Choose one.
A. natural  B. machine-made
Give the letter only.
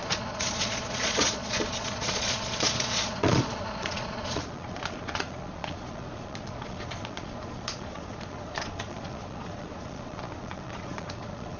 B